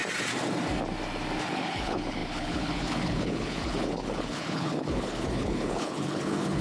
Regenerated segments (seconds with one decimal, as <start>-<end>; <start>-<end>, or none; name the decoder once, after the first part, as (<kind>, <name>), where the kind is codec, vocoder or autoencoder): 1.4-6.6 (codec, HILCodec)